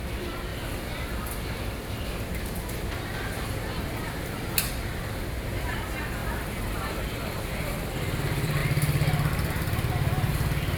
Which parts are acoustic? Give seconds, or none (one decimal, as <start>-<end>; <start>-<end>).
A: 0.0-6.2; 7.0-10.8